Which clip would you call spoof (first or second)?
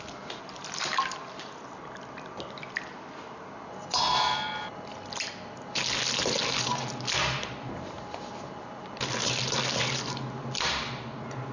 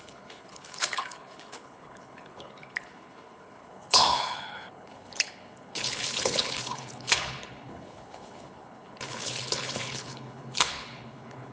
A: second